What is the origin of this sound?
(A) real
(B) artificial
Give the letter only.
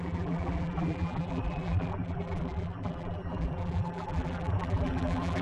B